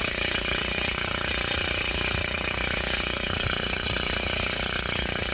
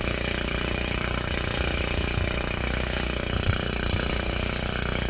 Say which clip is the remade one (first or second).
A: first